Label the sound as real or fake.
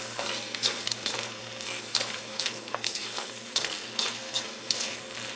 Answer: fake